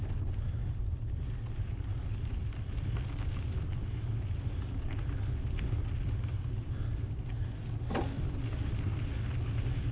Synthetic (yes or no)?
no